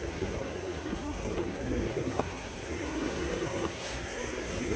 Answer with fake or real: fake